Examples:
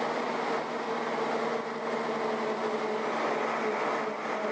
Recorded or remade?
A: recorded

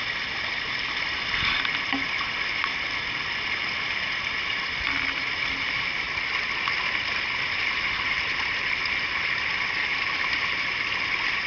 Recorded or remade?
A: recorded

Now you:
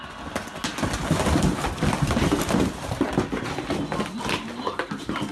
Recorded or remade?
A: recorded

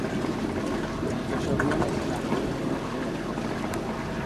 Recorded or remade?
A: recorded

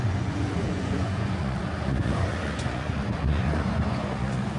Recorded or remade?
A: remade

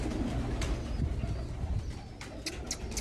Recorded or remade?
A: recorded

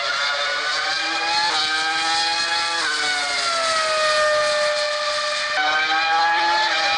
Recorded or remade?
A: recorded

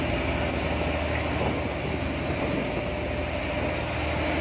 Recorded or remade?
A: recorded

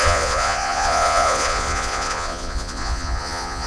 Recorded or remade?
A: remade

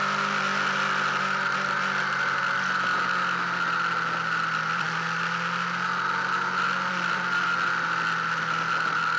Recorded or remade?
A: recorded